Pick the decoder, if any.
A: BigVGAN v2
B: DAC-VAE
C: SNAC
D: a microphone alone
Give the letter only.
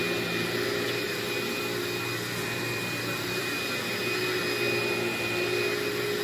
D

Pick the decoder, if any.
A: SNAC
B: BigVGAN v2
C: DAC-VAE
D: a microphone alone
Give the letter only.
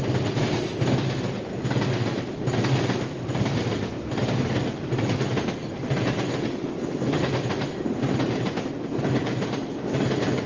D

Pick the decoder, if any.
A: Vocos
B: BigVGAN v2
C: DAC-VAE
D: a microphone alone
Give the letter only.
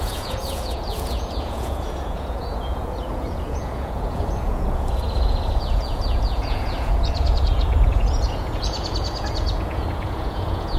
A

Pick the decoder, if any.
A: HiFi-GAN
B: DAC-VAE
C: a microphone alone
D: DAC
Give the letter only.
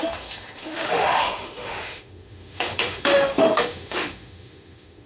B